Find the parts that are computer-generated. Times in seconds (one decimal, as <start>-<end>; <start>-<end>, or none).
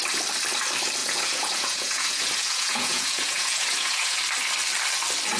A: 1.0-4.2